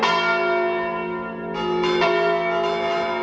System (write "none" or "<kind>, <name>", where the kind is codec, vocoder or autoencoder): none